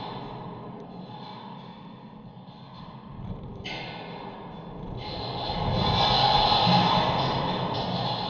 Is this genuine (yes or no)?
yes